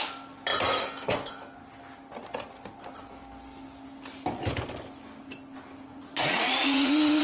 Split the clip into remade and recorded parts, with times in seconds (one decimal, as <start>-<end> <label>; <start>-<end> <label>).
0.0-5.9 recorded; 5.9-7.2 remade